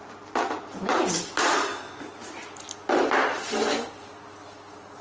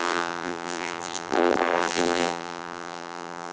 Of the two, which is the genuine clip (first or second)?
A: first